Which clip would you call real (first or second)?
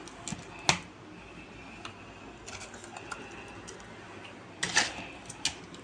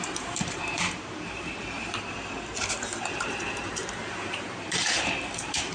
first